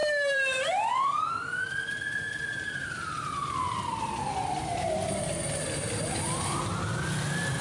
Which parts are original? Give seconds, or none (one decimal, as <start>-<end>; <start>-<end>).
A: 4.1-4.7; 6.2-7.6